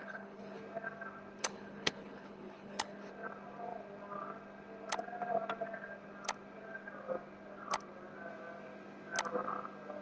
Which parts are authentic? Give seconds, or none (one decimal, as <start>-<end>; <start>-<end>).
0.6-1.4; 3.1-10.0